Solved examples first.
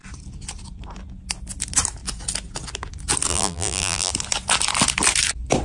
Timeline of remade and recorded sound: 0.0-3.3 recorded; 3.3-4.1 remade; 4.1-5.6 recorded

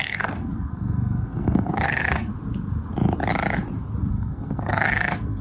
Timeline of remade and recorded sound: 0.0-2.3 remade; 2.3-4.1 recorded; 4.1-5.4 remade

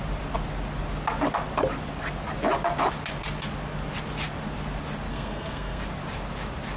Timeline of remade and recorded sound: 0.0-5.1 recorded; 5.1-5.8 remade; 5.8-6.8 recorded

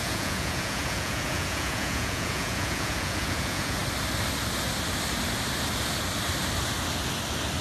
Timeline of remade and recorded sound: 0.0-3.8 remade; 3.8-7.6 recorded